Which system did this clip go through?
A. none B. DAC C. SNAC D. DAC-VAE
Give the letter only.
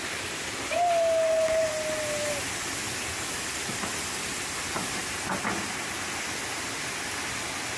A